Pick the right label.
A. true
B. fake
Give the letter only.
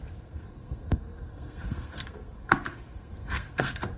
B